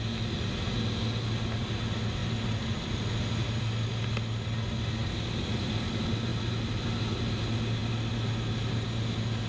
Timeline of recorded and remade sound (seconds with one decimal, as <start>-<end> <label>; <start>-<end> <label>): 0.0-6.3 recorded; 6.3-7.1 remade; 7.1-9.5 recorded